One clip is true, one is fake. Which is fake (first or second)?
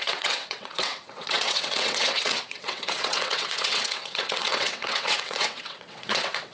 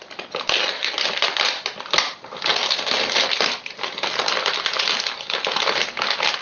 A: first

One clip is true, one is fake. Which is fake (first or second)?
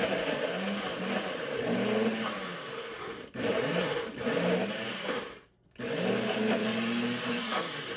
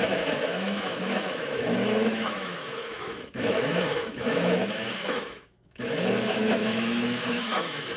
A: second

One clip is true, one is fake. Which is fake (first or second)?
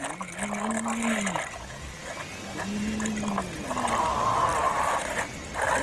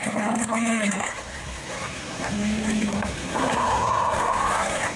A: second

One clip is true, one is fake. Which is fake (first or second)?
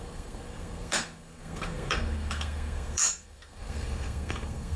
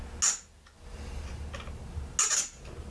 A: first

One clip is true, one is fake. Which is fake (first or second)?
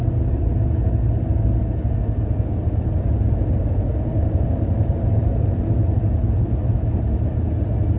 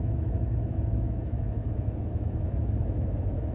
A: second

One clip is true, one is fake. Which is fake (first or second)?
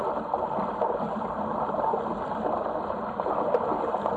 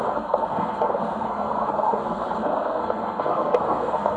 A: second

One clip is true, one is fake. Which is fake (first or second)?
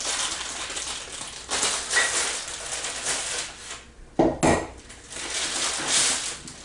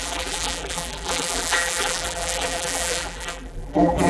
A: second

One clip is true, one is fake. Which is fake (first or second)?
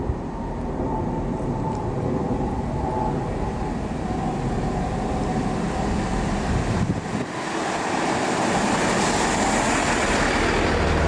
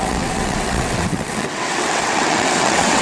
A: second